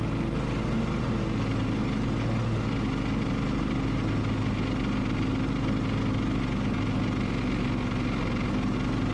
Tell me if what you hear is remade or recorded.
recorded